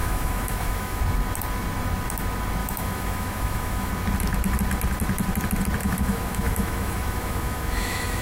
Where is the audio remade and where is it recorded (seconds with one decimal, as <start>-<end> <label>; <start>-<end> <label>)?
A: 0.0-1.0 remade; 1.0-2.6 recorded; 2.6-3.9 remade; 3.9-5.8 recorded; 5.8-8.2 remade